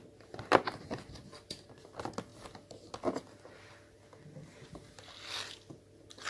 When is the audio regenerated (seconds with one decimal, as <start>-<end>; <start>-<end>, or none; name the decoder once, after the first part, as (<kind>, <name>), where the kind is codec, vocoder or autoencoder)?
none